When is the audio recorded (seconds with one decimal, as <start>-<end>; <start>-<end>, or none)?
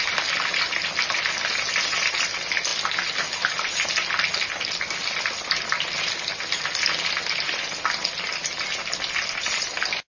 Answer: 0.0-10.1